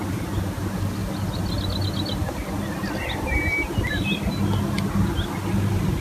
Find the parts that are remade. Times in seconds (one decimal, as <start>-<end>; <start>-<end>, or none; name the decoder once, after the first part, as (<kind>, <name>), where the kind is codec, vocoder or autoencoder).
none